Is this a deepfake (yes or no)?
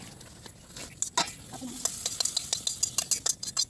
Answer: no